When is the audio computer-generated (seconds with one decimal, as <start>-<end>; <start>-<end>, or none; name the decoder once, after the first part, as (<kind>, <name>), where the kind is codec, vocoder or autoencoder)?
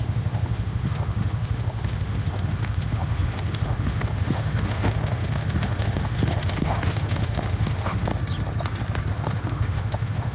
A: 0.0-8.1 (autoencoder, DAC-VAE); 9.1-10.3